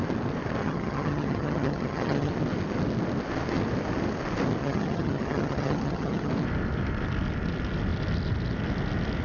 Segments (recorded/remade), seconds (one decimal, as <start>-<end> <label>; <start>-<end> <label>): 0.0-0.6 recorded; 0.6-2.3 remade; 2.3-4.6 recorded; 4.6-6.3 remade; 6.3-9.2 recorded